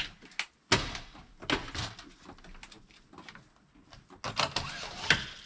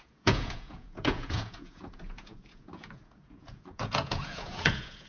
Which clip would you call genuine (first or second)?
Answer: first